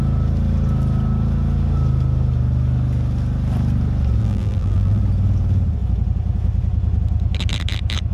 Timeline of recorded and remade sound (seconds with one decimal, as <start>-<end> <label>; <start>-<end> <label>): 0.0-4.2 recorded; 4.2-5.0 remade; 5.0-8.1 recorded